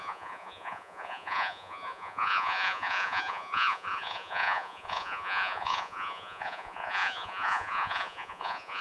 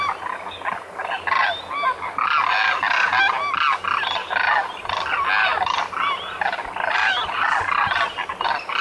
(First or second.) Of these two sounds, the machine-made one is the first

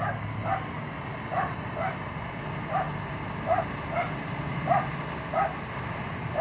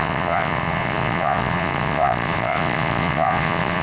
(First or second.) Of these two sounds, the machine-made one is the second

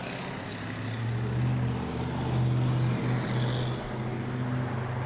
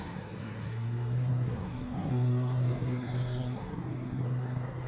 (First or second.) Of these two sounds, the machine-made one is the second